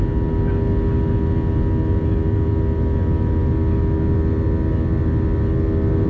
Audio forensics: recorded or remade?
recorded